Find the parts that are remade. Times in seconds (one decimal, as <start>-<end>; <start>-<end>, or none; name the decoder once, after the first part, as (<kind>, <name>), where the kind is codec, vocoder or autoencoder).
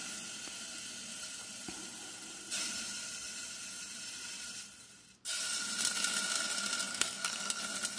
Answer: 6.9-7.6 (codec, SNAC)